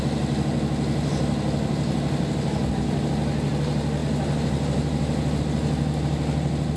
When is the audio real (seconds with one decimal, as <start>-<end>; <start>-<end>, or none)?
0.0-6.8